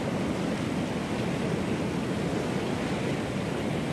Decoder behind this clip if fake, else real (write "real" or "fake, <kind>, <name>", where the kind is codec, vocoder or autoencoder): real